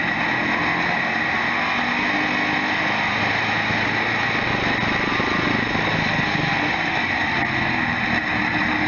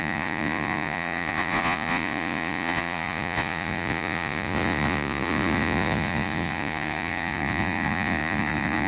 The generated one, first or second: second